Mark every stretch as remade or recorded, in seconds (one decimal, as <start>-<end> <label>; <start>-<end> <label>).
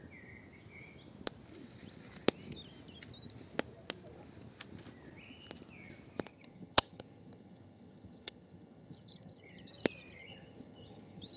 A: 0.0-6.3 recorded; 6.3-9.7 remade; 9.7-10.2 recorded; 10.2-11.4 remade